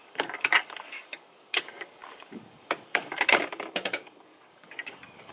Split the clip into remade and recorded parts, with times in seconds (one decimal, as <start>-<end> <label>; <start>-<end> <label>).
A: 0.0-5.3 remade